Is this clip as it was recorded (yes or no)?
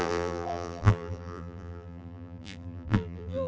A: no